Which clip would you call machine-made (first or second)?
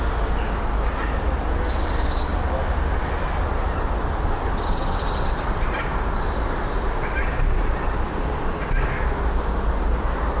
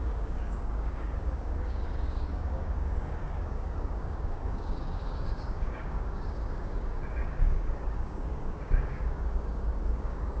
second